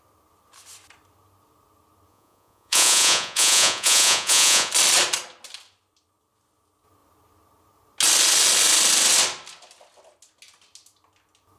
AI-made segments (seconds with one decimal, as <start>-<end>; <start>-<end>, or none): 2.1-4.7